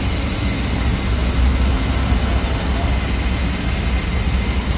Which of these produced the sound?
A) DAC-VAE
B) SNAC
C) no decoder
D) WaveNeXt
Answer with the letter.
C